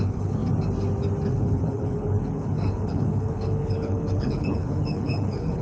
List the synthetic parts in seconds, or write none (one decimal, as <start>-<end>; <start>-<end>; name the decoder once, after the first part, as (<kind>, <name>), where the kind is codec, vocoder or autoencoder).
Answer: 0.0-0.4 (codec, HILCodec); 1.3-5.6